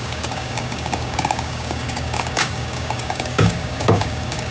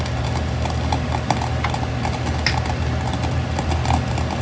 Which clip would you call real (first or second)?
second